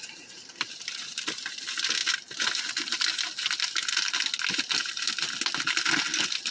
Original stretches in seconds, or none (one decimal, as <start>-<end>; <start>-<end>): 0.0-6.5